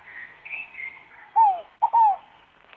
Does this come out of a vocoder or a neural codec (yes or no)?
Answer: yes